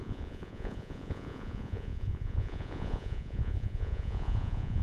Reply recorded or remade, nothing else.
remade